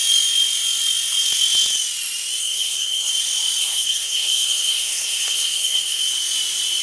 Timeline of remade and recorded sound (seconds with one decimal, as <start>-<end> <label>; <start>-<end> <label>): 0.0-2.4 recorded; 2.4-3.1 remade; 3.1-3.6 recorded; 3.6-6.0 remade; 6.0-6.8 recorded